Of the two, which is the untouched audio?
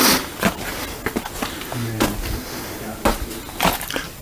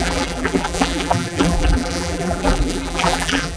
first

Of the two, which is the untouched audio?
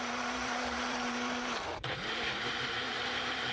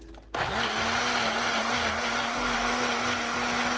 second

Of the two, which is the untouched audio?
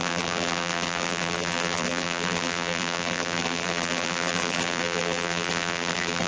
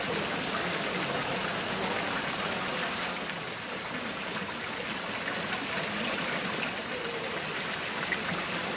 second